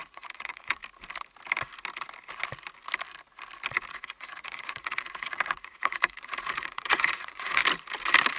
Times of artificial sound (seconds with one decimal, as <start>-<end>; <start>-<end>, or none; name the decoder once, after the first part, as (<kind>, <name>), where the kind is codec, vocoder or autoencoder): 0.0-0.8 (vocoder, Vocos); 3.9-7.6